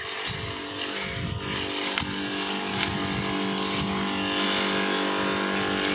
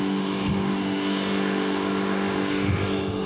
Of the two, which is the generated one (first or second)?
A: second